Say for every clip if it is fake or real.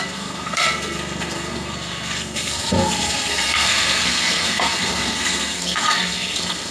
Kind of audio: fake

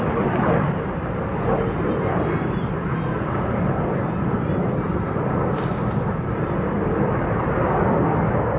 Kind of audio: real